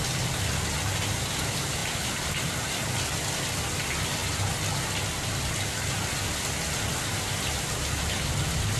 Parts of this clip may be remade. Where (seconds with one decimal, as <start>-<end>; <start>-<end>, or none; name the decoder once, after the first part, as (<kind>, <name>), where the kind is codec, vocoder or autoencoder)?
none